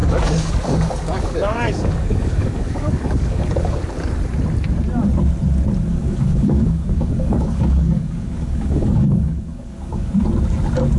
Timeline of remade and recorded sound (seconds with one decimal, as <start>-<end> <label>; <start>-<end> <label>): 0.0-3.8 remade; 3.8-5.9 recorded; 5.9-10.1 remade; 10.1-11.0 recorded